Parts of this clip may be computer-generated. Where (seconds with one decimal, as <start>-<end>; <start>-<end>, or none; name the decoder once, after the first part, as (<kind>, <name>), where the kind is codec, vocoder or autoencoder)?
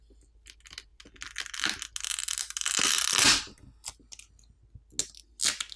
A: none